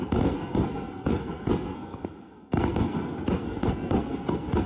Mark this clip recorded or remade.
remade